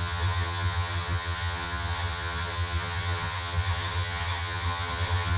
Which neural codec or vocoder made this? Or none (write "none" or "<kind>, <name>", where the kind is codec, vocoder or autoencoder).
vocoder, HiFi-GAN